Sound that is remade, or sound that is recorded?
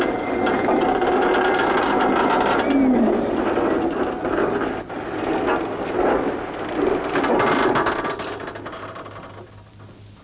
recorded